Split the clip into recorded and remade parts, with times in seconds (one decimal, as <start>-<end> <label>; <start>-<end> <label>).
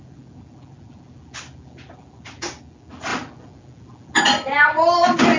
0.0-5.4 recorded